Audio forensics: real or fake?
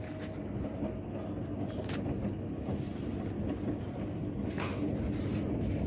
real